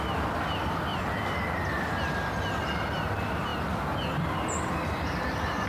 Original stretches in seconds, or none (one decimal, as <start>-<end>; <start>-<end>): 0.0-5.7

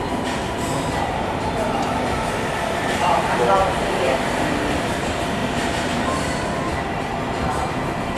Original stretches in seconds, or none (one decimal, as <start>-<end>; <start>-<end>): none

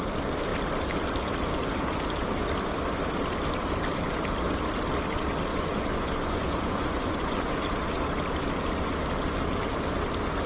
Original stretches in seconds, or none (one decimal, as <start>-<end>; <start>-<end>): 0.0-5.5; 7.5-10.5

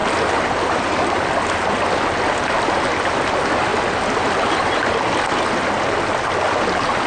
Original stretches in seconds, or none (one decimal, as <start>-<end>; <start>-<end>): 0.0-7.1

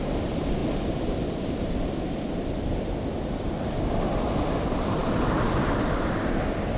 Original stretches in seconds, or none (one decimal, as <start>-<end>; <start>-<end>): 0.0-0.6; 3.9-6.8

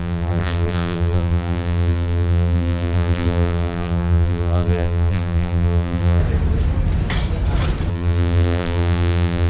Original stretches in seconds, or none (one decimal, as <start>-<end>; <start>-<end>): 6.2-7.9

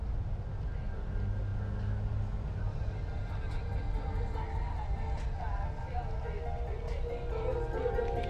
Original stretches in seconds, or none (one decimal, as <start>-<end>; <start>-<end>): 0.0-8.3

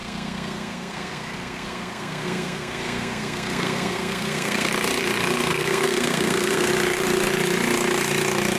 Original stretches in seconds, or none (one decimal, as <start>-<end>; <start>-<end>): 4.7-5.5; 6.7-8.6